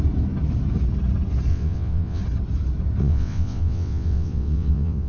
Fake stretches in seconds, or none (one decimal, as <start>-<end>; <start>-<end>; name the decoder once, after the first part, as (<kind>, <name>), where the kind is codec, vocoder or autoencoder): 1.5-2.2 (vocoder, WaveNeXt); 3.0-5.1